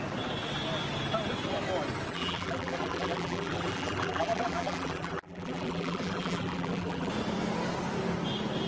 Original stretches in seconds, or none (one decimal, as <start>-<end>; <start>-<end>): 0.0-2.1; 7.1-8.7